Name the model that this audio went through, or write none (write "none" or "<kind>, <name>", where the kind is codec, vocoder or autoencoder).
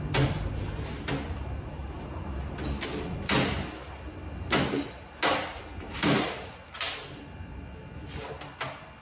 none